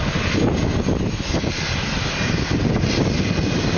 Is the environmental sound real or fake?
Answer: real